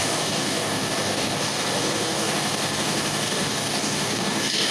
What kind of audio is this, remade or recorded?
remade